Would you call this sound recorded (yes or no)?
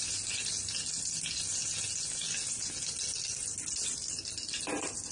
yes